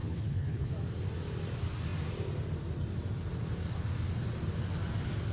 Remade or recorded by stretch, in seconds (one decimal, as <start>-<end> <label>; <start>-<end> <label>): 0.0-0.7 remade; 0.7-5.3 recorded